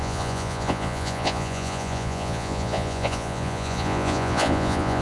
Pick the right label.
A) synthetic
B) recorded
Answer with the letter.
A